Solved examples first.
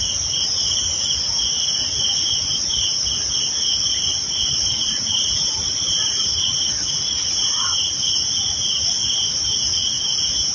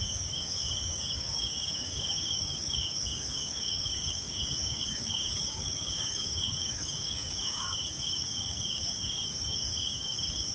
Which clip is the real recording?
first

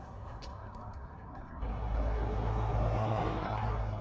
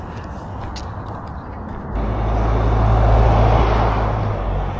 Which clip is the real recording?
second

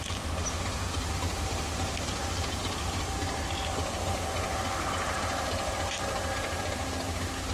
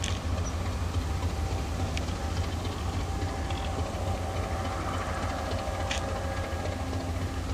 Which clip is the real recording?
second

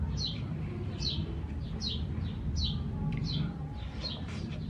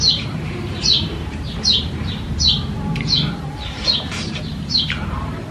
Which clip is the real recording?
first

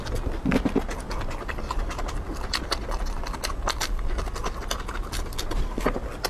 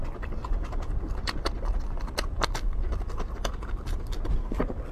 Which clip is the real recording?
first